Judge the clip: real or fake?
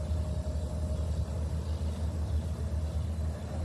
real